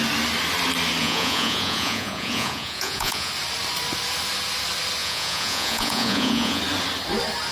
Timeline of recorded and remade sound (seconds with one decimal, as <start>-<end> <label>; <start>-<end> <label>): 0.0-1.0 recorded; 1.0-3.3 remade; 3.3-5.0 recorded; 5.0-6.6 remade; 6.6-7.5 recorded